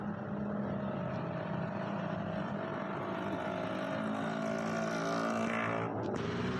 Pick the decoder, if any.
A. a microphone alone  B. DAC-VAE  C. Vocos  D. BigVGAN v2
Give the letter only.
A